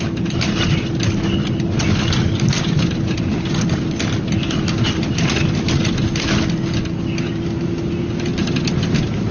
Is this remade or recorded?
recorded